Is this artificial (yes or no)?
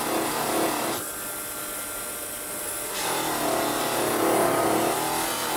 no